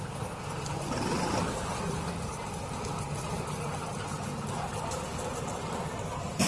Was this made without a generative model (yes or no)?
yes